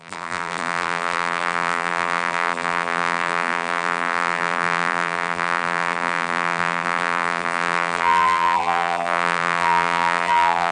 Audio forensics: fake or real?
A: fake